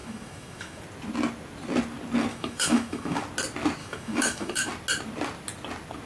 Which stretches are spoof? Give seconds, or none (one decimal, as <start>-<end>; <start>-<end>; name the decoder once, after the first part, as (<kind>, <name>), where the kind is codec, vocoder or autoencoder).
0.0-0.8 (autoencoder, DAC-VAE); 2.3-3.2; 3.8-4.7